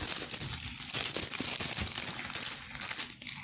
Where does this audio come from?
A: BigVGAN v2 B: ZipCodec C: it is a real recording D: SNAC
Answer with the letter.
C